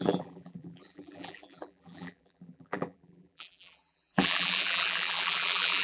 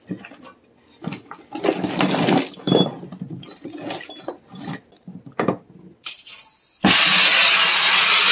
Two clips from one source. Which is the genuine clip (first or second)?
second